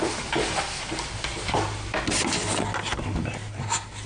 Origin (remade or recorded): recorded